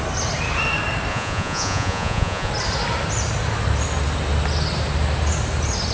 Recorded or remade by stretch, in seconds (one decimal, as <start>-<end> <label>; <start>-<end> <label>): 0.0-1.1 recorded; 1.1-2.5 remade; 2.5-5.9 recorded